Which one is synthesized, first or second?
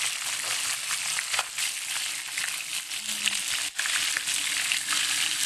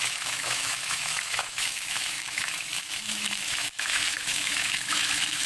second